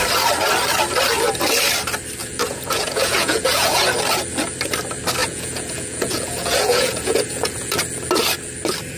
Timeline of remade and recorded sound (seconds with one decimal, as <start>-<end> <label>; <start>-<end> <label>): 0.0-2.2 recorded; 2.2-3.8 remade; 3.8-5.2 recorded; 5.2-7.8 remade; 7.8-9.0 recorded